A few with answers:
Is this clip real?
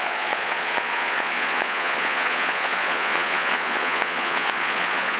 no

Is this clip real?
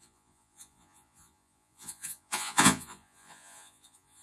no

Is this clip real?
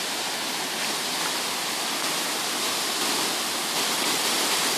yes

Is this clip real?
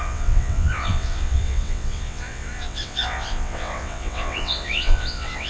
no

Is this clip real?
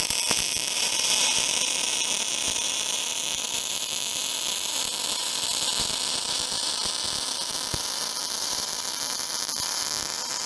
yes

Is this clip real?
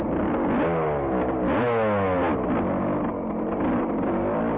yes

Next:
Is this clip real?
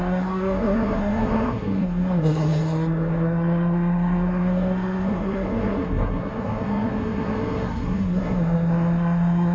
no